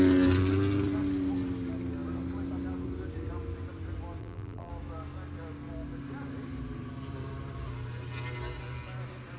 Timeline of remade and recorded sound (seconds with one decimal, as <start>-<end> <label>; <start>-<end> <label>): 0.0-4.2 recorded; 4.2-4.7 remade; 4.7-9.4 recorded